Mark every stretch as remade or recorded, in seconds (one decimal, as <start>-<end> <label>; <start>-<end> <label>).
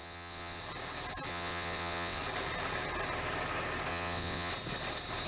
0.0-0.6 remade; 0.6-1.3 recorded; 1.3-2.2 remade; 2.2-3.9 recorded; 3.9-4.5 remade; 4.5-5.3 recorded